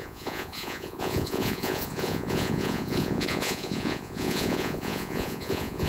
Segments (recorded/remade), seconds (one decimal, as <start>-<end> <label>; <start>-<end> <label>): 0.0-5.9 remade

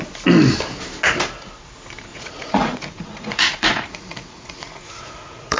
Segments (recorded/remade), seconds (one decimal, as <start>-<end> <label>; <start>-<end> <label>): 0.0-2.1 recorded; 2.1-5.6 remade

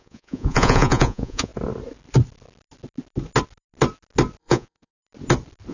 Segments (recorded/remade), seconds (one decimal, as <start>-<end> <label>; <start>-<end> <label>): 0.0-1.5 remade; 1.5-4.4 recorded; 4.4-4.9 remade; 4.9-5.7 recorded

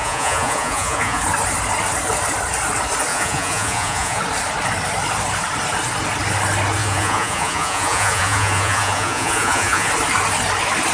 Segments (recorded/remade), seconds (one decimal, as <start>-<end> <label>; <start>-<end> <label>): 0.0-1.2 remade; 1.2-3.1 recorded; 3.1-4.2 remade; 4.2-6.8 recorded; 6.8-9.9 remade; 9.9-10.9 recorded

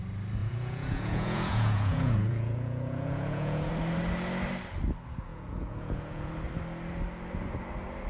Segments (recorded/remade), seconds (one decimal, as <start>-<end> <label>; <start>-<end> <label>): 0.0-0.4 recorded; 0.4-3.7 remade; 3.7-5.3 recorded; 5.3-6.3 remade; 6.3-8.1 recorded

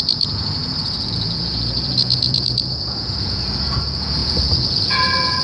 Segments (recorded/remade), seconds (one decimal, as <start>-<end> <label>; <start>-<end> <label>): 0.0-5.4 remade